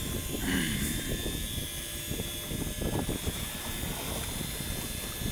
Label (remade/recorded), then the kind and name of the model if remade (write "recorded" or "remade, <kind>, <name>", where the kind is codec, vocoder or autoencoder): recorded